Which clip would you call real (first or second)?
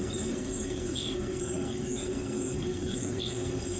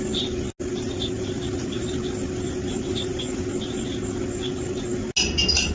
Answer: second